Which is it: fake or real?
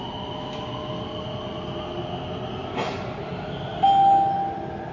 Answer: real